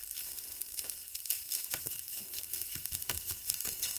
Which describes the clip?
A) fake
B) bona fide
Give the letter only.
A